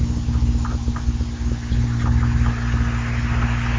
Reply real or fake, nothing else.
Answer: real